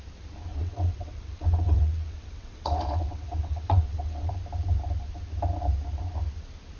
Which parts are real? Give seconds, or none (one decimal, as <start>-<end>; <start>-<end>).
0.0-0.5; 4.3-6.8